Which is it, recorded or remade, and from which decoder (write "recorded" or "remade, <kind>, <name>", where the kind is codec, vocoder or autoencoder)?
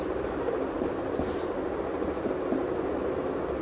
recorded